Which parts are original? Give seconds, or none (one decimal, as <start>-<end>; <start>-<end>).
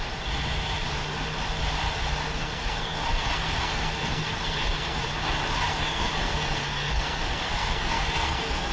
0.0-2.4; 5.0-5.7